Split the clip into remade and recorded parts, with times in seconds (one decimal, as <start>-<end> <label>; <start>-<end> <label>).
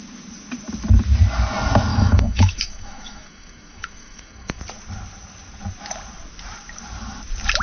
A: 0.0-1.9 recorded; 1.9-4.6 remade; 4.6-7.6 recorded